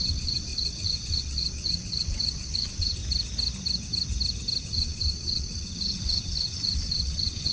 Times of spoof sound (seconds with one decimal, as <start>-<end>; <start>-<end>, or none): 0.0-3.0; 4.6-7.5